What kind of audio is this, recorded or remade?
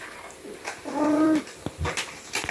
remade